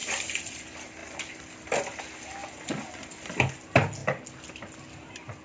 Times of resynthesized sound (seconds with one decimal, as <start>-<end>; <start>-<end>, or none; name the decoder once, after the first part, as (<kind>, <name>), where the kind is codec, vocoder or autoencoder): 0.0-0.6 (vocoder, BigVGAN v2)